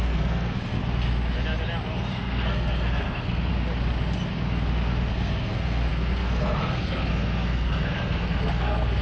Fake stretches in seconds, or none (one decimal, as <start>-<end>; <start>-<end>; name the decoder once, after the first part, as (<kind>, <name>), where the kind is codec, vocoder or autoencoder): 0.0-0.8 (codec, SNAC); 2.1-3.5; 5.1-9.0